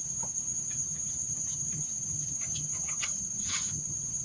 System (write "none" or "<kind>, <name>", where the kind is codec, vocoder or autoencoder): vocoder, HiFi-GAN